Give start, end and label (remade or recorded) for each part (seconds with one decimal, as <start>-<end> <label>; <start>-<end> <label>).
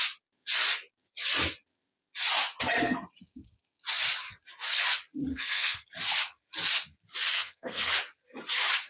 0.0-5.3 recorded; 5.3-5.9 remade; 5.9-7.3 recorded; 7.3-7.9 remade; 7.9-8.9 recorded